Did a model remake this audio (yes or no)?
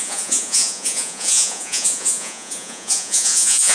yes